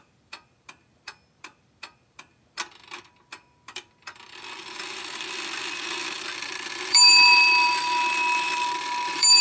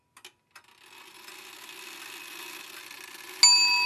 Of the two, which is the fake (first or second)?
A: first